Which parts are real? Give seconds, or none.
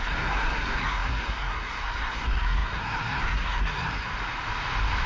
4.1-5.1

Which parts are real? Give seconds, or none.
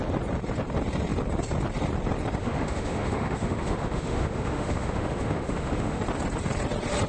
0.0-2.4; 6.0-7.1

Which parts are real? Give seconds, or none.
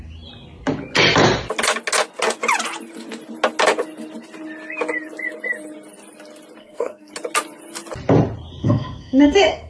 0.0-6.6; 7.1-8.6